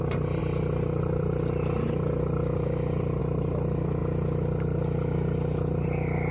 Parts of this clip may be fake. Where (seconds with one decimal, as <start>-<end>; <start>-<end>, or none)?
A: none